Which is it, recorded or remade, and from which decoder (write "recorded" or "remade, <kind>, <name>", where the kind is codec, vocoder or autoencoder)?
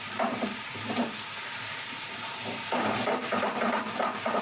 remade, vocoder, BigVGAN v2